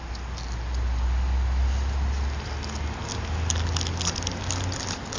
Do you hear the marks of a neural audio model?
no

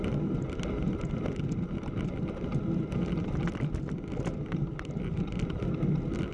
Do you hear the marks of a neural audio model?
no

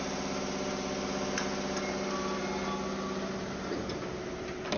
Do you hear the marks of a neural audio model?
no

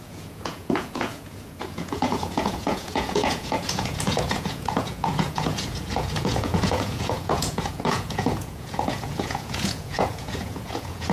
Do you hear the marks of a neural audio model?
yes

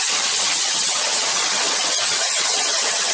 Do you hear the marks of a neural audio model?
yes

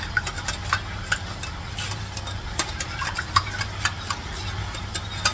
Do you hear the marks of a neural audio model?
no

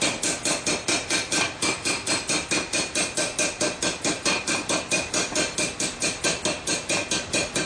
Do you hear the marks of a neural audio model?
no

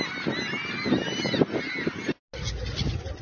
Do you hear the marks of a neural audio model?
no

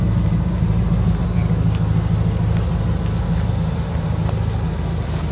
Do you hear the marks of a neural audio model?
no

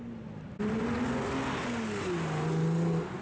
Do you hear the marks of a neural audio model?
no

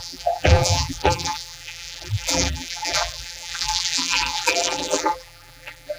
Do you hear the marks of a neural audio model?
yes